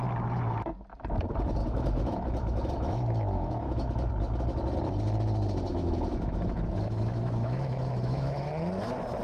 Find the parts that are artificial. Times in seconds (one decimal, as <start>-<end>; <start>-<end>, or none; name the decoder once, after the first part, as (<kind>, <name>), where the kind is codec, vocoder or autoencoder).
1.6-4.1 (autoencoder, DAC-VAE); 5.7-8.5